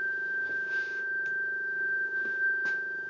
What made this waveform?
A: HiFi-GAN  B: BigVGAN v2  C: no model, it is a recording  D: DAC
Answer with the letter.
D